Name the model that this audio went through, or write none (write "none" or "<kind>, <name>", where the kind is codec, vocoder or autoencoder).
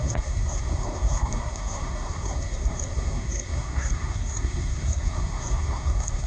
codec, SNAC